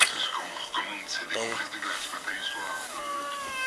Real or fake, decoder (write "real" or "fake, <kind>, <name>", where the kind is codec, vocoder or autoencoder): fake, codec, DAC